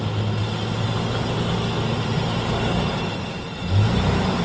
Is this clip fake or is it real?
real